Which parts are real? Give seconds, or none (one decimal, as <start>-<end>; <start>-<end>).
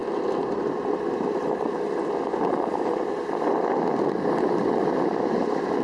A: 3.5-5.8